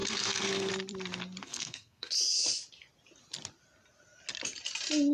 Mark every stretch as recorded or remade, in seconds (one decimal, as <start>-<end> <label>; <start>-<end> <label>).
0.0-0.7 remade; 0.7-1.4 recorded; 1.4-2.1 remade; 2.1-5.1 recorded